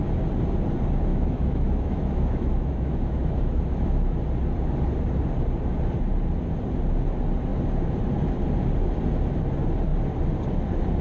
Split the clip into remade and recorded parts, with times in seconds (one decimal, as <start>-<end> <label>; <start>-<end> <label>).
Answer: 0.0-1.1 recorded; 1.1-4.2 remade; 4.2-11.0 recorded